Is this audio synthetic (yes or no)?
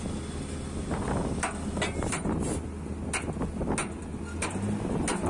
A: no